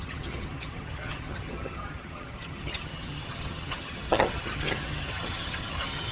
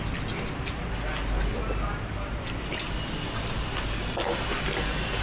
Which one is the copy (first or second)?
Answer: first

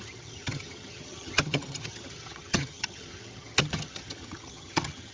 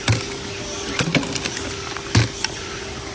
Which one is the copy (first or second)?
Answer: first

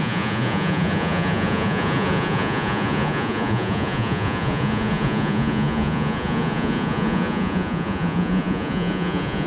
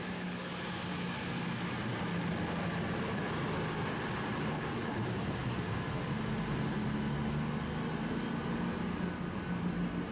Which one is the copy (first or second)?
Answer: first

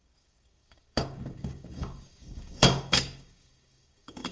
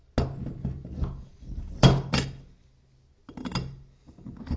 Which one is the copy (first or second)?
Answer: first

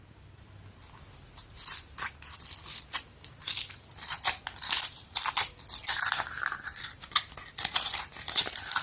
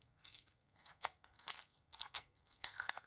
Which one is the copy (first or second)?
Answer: second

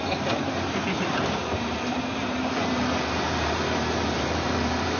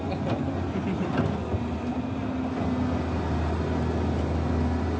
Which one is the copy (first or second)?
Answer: first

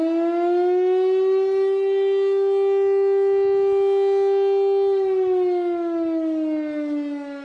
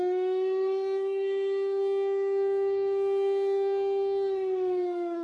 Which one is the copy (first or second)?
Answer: second